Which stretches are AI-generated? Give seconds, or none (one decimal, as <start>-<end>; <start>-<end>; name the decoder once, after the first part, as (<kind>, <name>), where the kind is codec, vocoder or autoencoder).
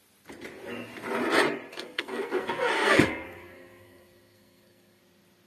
1.7-5.0 (codec, SNAC)